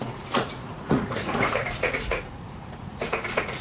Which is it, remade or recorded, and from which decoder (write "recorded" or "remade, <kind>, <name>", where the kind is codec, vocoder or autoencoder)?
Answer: remade, vocoder, Vocos